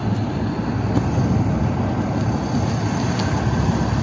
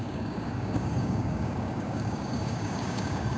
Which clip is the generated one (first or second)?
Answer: second